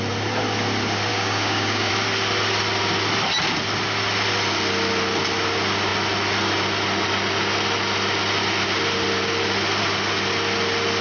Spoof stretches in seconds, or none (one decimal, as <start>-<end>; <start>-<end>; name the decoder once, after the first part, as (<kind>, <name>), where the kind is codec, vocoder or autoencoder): 1.1-1.9 (codec, DAC)